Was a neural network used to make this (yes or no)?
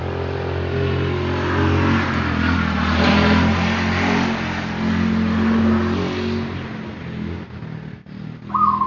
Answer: no